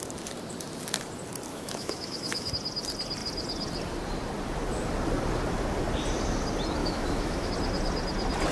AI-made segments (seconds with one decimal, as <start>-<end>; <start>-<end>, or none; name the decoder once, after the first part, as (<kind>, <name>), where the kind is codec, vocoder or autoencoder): 1.5-2.5 (autoencoder, DAC-VAE); 6.8-7.5